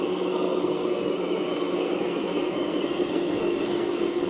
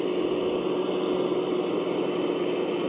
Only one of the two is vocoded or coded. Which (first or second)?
first